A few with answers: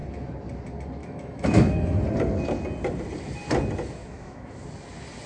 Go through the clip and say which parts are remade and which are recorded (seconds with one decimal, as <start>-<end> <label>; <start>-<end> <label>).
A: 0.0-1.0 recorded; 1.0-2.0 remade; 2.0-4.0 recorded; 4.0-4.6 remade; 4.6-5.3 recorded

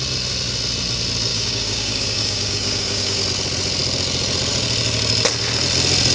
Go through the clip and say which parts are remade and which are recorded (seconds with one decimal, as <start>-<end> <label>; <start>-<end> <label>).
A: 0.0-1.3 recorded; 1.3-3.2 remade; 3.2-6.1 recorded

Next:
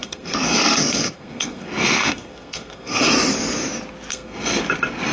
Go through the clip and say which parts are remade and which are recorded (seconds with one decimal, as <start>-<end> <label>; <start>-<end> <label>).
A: 0.0-3.1 remade; 3.1-4.1 recorded; 4.1-4.6 remade; 4.6-5.1 recorded